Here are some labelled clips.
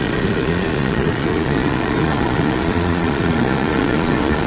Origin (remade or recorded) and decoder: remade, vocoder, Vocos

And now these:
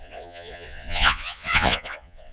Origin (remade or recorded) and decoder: remade, vocoder, Vocos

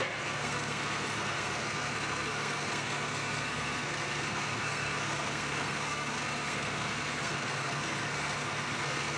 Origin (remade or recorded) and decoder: remade, codec, SNAC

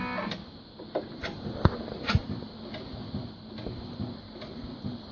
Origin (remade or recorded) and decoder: recorded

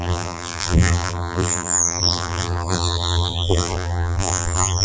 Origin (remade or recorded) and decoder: remade, vocoder, BigVGAN v2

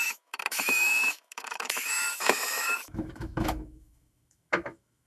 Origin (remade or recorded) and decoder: remade, autoencoder, DAC-VAE